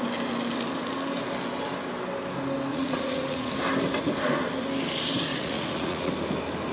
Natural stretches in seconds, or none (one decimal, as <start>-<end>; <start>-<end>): 0.0-2.7; 3.5-5.3; 6.1-6.7